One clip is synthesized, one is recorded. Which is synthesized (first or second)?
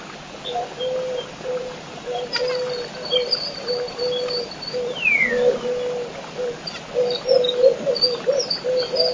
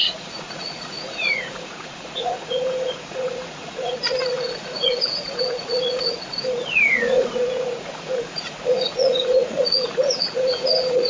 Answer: second